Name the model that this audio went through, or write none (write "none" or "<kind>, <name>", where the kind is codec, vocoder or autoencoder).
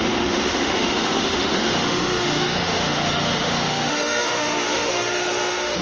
autoencoder, DAC-VAE